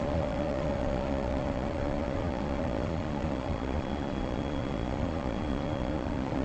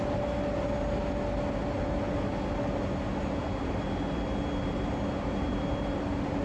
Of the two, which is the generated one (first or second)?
first